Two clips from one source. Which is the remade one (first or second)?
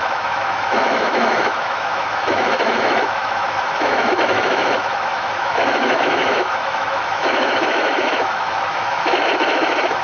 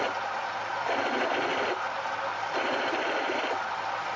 first